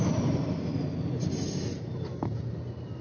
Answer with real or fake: real